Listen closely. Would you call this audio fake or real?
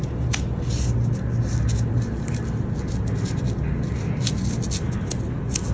real